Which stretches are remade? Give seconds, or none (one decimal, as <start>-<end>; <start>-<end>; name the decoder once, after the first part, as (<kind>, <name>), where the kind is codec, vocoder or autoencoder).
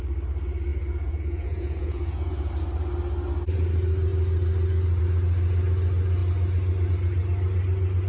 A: 0.7-2.5 (vocoder, Vocos)